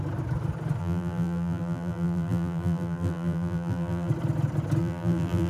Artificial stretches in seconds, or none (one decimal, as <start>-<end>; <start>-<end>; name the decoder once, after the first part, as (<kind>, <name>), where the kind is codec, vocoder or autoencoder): 0.8-4.1 (vocoder, BigVGAN v2); 4.8-5.5